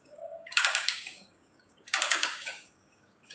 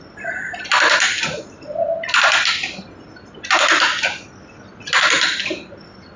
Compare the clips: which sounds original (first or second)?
second